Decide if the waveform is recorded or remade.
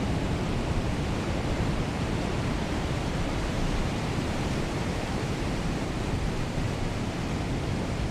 remade